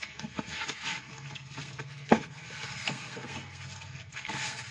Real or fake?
fake